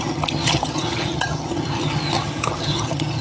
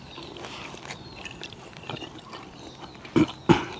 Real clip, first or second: second